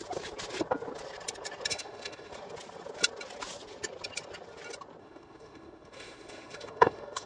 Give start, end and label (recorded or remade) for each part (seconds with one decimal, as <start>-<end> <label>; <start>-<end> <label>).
0.0-1.7 recorded; 1.7-2.3 remade; 2.3-5.0 recorded; 5.0-7.3 remade